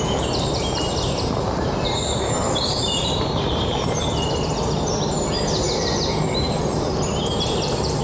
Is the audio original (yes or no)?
no